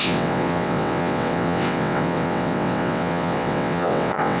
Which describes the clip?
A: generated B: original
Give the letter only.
A